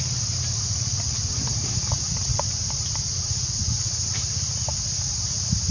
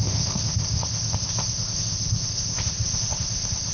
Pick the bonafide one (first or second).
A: first